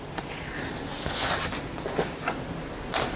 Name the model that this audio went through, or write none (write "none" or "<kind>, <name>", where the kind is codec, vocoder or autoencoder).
none